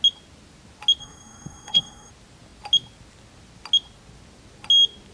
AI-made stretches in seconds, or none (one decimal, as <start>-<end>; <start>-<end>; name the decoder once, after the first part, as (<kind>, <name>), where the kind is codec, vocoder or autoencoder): 1.0-2.1 (codec, SNAC)